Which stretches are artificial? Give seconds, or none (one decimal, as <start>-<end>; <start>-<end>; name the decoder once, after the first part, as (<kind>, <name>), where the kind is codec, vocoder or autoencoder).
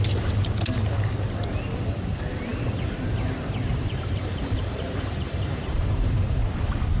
3.7-6.4 (vocoder, BigVGAN v2)